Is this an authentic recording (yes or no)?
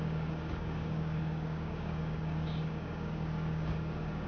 no